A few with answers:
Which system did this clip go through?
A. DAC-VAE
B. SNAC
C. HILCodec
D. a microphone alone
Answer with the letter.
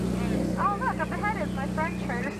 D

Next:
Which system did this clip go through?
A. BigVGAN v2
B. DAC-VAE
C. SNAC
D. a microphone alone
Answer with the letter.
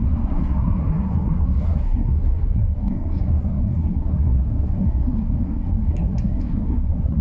C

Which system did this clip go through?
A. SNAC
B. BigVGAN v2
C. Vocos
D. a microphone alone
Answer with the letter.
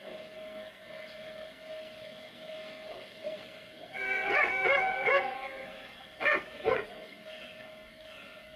A